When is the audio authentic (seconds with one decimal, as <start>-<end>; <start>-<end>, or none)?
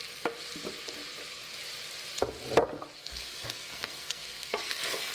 0.0-3.0